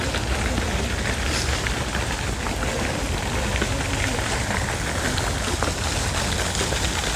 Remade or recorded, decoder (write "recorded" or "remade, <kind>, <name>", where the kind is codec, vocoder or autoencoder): recorded